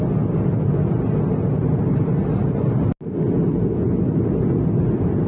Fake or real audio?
real